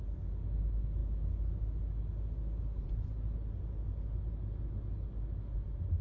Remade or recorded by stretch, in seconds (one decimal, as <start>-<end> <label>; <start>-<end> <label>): 0.0-6.0 recorded